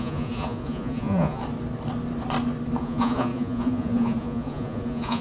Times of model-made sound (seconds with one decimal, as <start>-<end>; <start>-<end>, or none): 0.0-1.4; 2.8-5.2